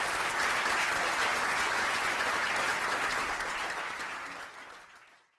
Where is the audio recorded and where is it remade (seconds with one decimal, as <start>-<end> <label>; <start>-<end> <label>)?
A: 0.0-1.3 recorded; 1.3-2.3 remade; 2.3-5.4 recorded

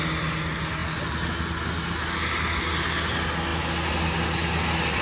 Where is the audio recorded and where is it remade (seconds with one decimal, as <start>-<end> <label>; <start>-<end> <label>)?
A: 0.0-5.0 recorded

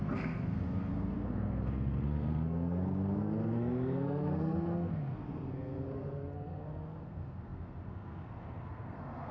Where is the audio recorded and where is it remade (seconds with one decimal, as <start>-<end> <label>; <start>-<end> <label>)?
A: 0.0-9.3 remade

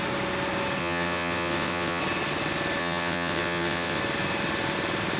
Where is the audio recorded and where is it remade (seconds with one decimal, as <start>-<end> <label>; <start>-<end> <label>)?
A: 0.0-0.8 recorded; 0.8-2.0 remade; 2.0-2.8 recorded; 2.8-4.0 remade; 4.0-5.2 recorded

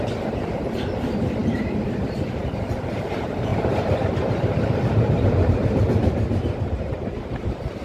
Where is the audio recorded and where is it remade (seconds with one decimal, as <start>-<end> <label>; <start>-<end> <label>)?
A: 0.0-7.8 remade

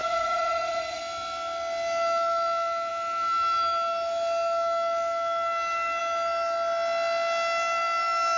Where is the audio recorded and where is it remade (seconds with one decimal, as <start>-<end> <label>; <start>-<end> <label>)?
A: 0.0-1.0 remade; 1.0-8.4 recorded